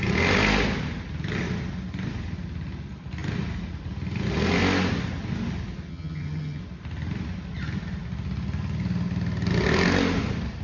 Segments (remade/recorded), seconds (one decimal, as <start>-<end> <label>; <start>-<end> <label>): 0.0-5.9 recorded; 5.9-6.6 remade; 6.6-10.6 recorded